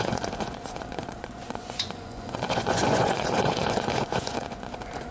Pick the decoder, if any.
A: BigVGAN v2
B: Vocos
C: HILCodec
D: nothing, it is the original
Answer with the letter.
B